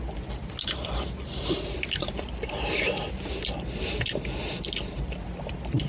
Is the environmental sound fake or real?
real